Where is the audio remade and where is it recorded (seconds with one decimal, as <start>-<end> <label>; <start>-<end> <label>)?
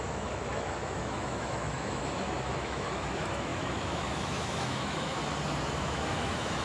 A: 0.0-5.2 remade; 5.2-5.8 recorded; 5.8-6.6 remade